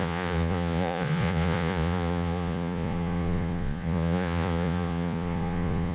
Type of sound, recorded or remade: remade